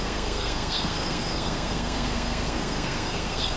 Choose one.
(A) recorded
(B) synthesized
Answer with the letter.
B